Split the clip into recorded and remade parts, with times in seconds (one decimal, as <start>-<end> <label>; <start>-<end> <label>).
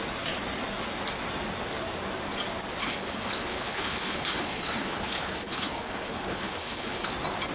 0.0-2.8 recorded; 2.8-7.1 remade; 7.1-7.5 recorded